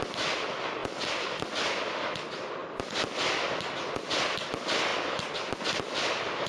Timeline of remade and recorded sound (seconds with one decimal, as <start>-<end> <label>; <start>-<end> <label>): 0.0-6.5 recorded